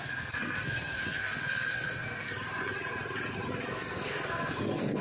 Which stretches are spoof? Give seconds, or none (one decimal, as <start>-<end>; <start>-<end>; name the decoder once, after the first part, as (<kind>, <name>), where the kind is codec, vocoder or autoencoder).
0.0-2.3 (codec, SNAC); 3.7-5.0